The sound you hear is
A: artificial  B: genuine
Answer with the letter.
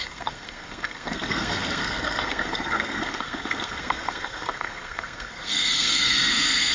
A